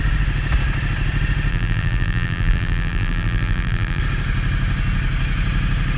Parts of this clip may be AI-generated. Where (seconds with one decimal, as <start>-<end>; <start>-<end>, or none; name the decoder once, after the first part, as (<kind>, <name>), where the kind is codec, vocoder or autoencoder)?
1.5-4.0 (vocoder, BigVGAN v2)